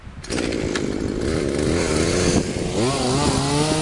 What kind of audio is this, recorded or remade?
recorded